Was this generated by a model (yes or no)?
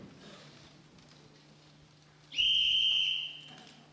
no